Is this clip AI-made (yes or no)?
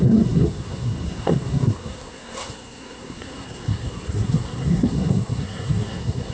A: yes